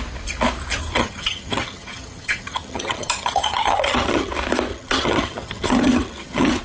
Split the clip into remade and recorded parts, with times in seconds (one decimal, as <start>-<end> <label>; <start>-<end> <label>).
0.0-1.0 recorded; 1.0-4.3 remade; 4.3-4.7 recorded; 4.7-6.6 remade